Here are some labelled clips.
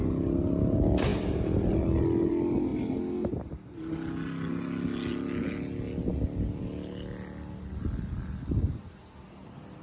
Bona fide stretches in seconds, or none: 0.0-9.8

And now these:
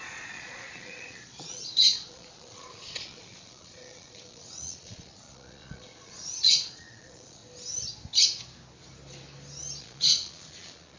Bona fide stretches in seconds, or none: 7.4-9.8

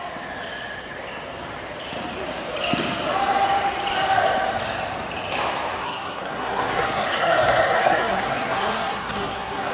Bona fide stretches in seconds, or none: 0.0-5.8

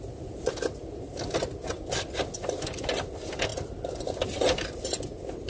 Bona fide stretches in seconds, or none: 0.0-5.5

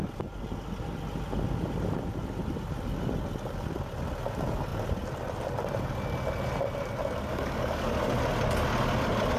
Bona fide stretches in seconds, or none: 0.0-7.3; 8.0-9.4

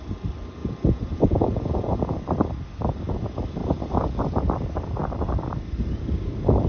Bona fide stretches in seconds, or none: 0.0-0.6; 2.2-3.6; 4.4-6.7

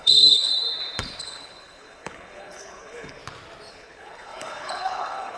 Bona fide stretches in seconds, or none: 0.5-1.2; 3.2-3.7